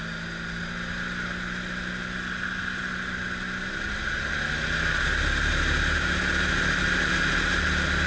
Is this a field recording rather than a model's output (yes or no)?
yes